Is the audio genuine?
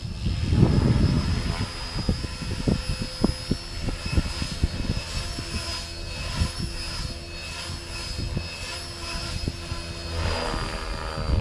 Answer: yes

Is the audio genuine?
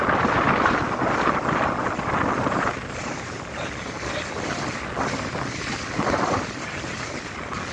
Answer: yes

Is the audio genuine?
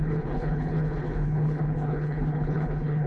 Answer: no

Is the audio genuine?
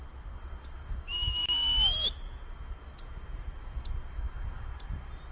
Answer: yes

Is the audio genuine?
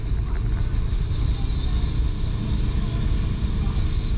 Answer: yes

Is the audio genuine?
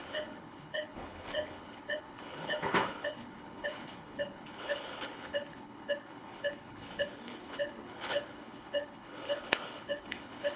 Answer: no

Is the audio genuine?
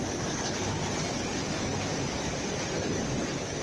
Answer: yes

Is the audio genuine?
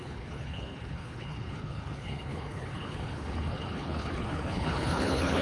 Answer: no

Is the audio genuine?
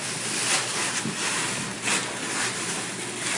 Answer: yes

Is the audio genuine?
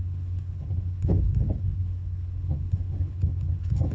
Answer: no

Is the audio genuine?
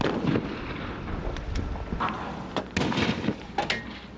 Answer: yes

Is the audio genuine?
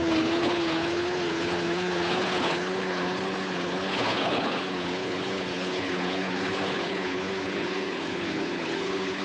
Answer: no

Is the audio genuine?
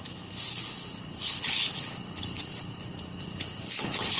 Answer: no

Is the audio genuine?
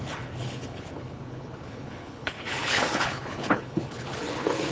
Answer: no